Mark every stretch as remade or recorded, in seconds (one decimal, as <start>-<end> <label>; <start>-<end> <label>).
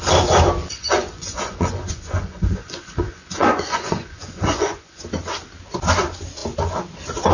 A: 0.0-0.6 recorded; 0.6-5.0 remade; 5.0-7.3 recorded